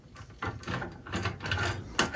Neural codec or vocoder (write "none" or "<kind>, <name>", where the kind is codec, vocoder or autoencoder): none